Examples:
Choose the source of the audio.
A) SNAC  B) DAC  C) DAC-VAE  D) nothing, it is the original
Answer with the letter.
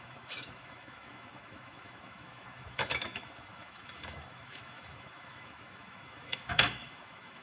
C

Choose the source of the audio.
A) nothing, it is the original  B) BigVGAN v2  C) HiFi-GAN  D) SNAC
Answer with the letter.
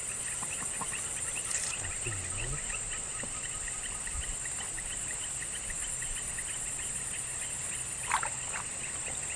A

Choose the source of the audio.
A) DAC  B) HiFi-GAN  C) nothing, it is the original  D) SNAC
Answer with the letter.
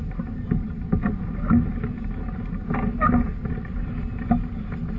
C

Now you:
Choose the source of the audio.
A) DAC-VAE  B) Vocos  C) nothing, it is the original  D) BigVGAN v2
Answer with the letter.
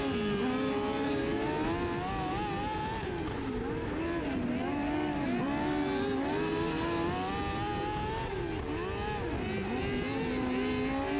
C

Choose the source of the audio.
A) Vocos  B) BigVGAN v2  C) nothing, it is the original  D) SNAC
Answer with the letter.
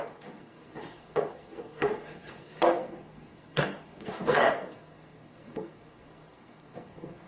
D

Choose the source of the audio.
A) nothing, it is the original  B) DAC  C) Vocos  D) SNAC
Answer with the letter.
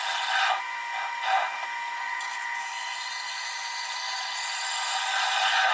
A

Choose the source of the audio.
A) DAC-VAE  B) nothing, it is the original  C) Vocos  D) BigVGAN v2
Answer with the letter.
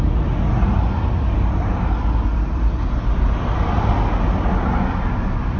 B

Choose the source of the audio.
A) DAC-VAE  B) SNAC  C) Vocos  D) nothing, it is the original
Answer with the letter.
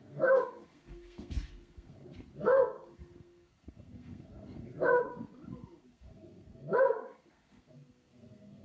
B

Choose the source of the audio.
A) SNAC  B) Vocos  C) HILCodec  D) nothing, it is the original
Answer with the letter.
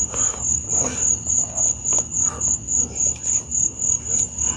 D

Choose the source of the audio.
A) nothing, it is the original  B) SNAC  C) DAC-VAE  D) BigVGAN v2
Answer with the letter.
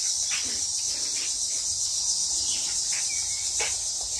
A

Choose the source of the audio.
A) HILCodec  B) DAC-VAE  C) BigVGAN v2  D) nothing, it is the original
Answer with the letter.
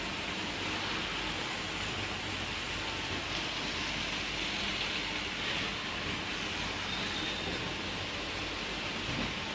D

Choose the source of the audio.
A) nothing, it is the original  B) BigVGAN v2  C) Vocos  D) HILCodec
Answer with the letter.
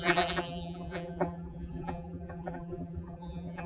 B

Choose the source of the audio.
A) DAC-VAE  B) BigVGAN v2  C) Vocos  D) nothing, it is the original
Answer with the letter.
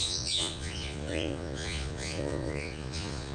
C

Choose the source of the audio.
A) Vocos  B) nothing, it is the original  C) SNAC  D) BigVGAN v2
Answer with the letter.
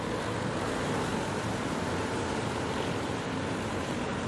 D